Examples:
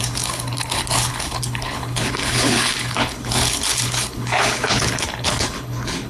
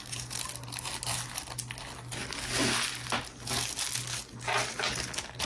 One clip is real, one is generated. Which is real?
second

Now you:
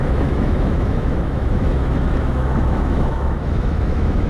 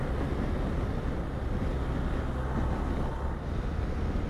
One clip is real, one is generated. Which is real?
second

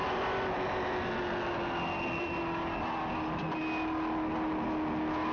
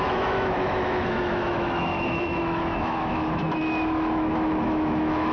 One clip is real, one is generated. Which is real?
first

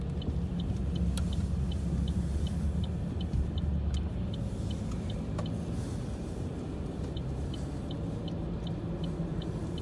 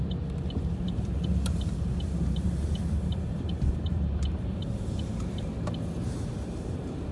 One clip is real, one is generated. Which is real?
first